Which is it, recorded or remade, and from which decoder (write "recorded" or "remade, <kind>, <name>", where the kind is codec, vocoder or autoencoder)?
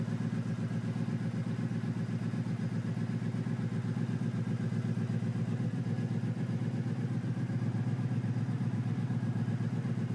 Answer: recorded